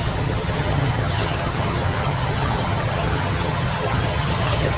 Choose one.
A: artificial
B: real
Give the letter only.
A